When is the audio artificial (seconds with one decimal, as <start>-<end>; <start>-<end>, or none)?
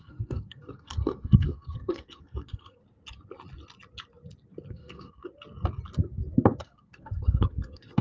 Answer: 0.0-2.8; 4.7-5.2; 6.6-8.0